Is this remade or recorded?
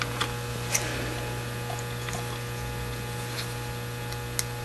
recorded